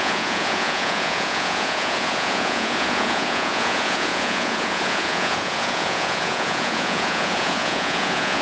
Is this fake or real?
fake